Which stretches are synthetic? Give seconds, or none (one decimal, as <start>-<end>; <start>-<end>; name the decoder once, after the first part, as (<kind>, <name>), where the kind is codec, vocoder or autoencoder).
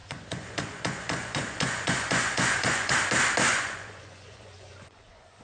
0.0-2.9 (vocoder, Vocos); 3.5-5.4